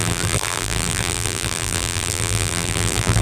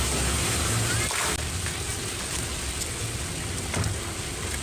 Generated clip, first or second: first